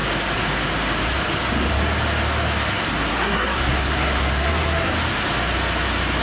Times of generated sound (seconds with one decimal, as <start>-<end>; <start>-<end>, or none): 3.1-4.9